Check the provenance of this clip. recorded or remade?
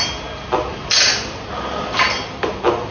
recorded